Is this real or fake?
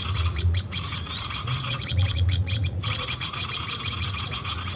fake